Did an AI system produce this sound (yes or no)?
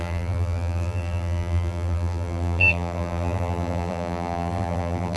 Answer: yes